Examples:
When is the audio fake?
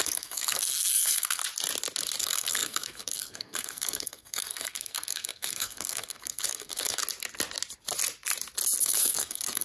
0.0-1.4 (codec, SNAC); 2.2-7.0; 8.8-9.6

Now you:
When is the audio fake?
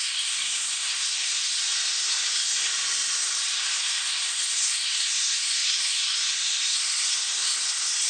0.0-1.4 (codec, SNAC); 1.9-2.7; 3.6-8.1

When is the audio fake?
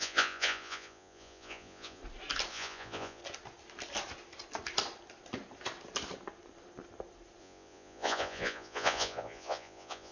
0.0-2.0 (vocoder, Vocos); 2.5-3.2; 7.4-10.1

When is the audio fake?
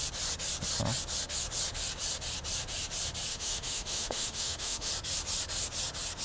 3.3-4.9 (autoencoder, DAC-VAE)